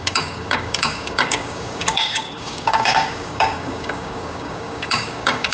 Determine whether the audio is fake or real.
fake